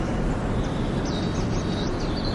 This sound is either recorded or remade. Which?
recorded